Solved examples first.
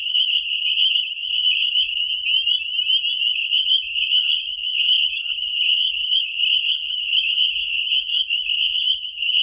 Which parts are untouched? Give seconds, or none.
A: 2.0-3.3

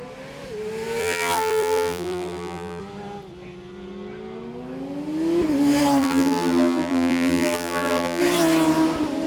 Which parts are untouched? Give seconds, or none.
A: 0.0-1.0; 2.8-6.0; 8.2-9.3

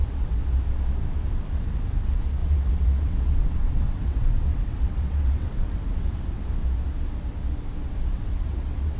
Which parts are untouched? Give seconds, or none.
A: 0.4-1.3; 6.6-7.9

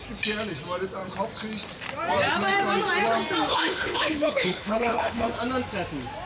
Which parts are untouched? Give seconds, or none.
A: 0.0-3.5; 5.3-6.3

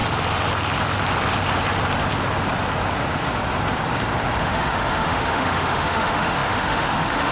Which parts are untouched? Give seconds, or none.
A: 0.0-4.4

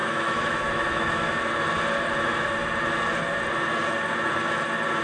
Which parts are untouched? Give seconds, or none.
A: 1.4-5.0

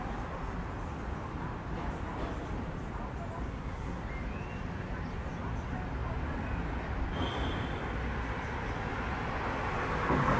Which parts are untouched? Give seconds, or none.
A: 0.0-3.5; 4.0-10.4